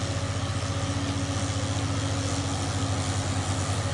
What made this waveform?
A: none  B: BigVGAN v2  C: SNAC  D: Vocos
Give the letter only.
A